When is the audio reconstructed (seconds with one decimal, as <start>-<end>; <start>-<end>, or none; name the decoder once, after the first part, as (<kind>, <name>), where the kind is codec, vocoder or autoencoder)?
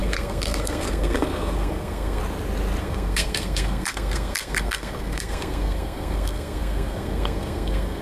0.0-2.2 (codec, SNAC); 2.8-8.0